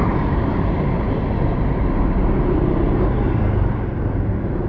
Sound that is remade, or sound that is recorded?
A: recorded